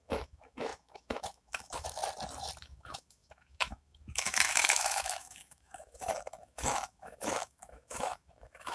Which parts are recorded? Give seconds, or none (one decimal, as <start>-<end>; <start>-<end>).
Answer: 2.0-2.6